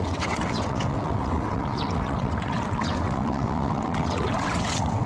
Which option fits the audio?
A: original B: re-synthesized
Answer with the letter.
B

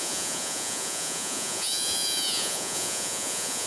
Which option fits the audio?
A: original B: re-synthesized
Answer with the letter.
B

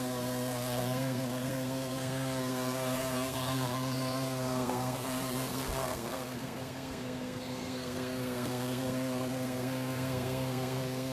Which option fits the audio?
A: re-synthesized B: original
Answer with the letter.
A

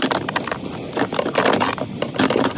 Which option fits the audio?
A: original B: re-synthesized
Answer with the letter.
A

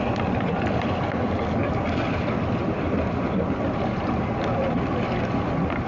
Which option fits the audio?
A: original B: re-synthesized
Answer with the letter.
A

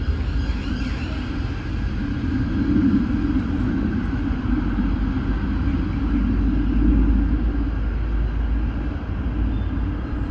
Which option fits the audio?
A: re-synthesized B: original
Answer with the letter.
B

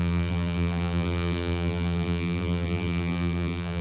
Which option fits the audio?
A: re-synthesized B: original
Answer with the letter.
A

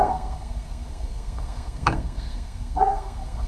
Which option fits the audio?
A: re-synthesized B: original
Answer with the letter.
A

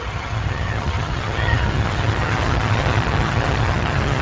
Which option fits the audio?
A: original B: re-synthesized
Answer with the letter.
B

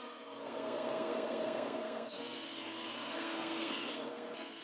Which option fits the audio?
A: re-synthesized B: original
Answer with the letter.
A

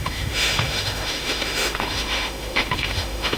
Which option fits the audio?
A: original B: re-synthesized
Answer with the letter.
B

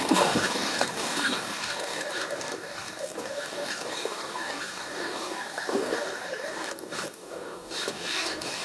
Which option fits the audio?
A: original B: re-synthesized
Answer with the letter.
B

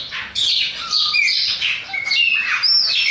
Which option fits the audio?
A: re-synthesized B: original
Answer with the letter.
B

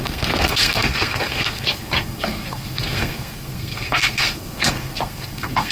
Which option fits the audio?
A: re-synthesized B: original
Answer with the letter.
A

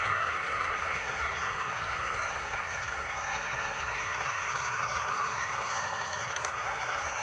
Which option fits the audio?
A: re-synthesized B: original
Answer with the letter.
A